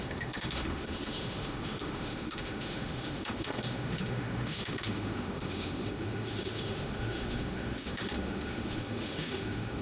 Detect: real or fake fake